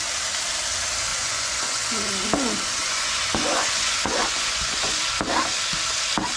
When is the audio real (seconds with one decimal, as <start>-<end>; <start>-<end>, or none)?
0.0-1.1; 1.9-2.8; 5.0-6.4